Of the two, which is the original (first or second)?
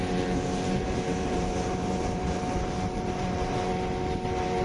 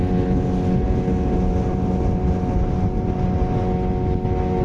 second